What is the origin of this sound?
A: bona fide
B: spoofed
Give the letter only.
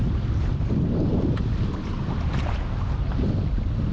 A